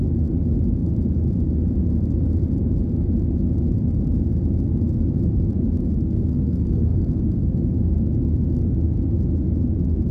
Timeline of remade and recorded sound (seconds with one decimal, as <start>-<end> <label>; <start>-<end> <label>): 0.0-5.8 recorded; 5.8-8.0 remade; 8.0-10.1 recorded